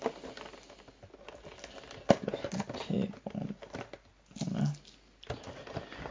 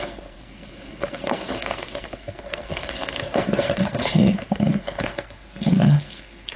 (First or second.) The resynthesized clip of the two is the second